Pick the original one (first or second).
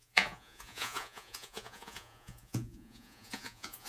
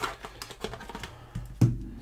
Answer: second